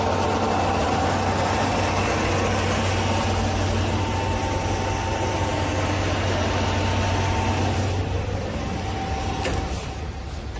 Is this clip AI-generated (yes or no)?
no